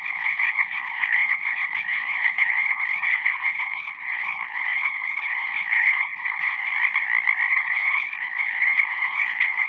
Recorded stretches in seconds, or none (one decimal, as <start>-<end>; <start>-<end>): 6.6-7.5